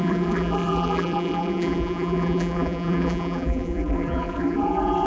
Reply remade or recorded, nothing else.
remade